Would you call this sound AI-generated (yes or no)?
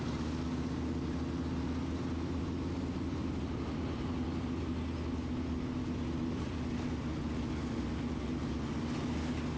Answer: no